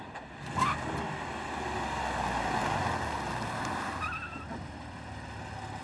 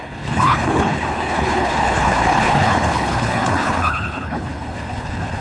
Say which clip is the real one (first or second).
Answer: first